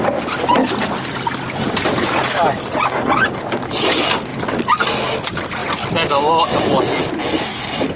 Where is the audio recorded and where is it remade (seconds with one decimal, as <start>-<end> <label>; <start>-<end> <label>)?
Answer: 0.0-8.0 recorded